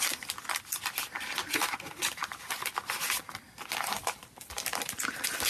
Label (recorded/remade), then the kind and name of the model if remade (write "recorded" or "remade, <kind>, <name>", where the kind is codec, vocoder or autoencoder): recorded